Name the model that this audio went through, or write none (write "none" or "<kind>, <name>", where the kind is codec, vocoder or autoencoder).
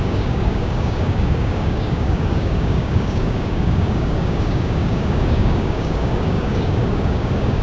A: codec, DAC